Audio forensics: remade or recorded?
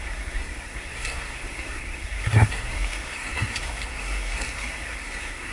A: remade